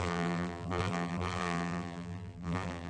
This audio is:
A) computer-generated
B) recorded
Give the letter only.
A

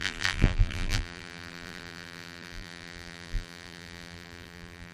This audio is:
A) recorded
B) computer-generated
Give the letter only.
B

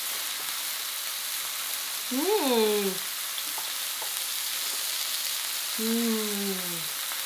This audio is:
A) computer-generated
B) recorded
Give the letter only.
B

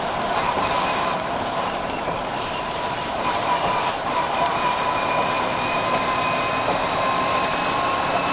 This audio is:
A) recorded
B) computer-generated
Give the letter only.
B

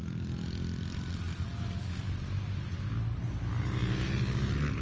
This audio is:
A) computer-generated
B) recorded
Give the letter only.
B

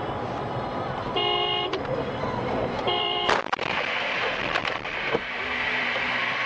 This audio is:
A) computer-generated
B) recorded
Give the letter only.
A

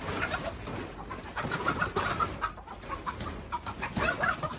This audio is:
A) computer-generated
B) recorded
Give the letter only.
A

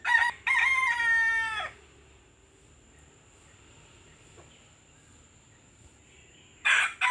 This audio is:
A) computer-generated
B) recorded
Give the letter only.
B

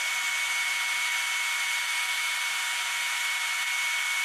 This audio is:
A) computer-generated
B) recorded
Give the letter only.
A